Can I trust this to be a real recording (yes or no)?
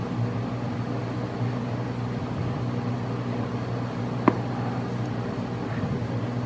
yes